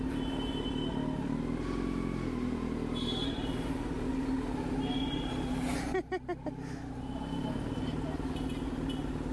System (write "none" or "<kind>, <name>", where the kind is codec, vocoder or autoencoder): none